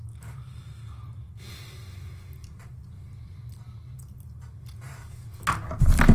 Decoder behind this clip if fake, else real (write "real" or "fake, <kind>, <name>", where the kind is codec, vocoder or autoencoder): real